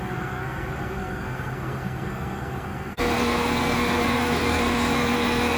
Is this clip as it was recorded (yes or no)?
no